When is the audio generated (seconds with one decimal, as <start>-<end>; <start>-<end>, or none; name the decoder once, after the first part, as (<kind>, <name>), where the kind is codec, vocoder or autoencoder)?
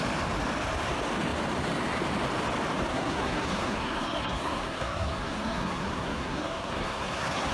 2.9-7.5 (codec, SNAC)